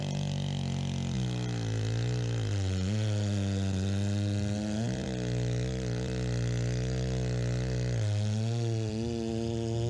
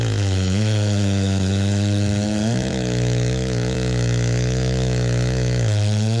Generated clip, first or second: second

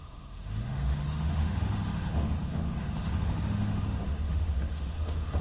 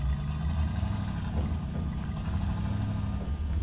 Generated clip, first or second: first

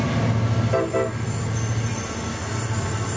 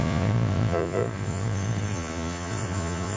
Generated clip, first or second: second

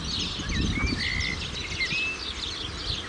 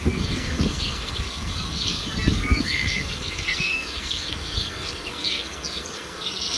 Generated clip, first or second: second